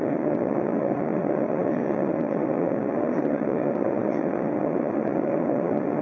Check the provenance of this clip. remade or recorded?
remade